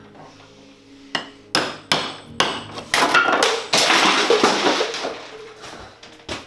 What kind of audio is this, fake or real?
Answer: real